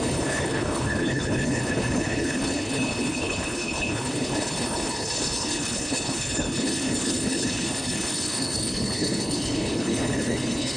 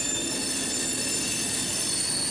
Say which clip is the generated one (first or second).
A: first